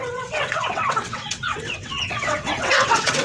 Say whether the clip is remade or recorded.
remade